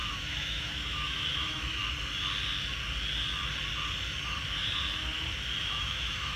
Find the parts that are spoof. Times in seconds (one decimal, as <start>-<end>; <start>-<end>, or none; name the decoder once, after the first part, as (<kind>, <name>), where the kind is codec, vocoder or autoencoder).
0.0-1.8 (autoencoder, DAC-VAE); 5.6-6.4